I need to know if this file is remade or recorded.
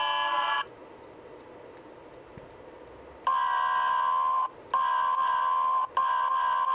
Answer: recorded